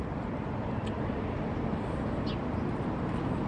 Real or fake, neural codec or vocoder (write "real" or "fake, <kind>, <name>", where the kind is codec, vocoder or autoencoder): real